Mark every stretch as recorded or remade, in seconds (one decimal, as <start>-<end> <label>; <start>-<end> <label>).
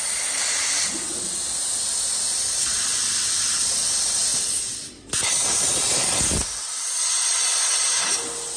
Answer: 0.0-8.6 recorded